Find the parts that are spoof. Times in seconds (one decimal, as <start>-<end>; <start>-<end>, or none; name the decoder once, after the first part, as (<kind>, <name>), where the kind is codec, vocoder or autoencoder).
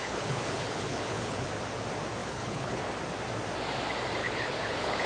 0.0-1.5 (codec, HILCodec); 2.2-2.8; 4.2-5.1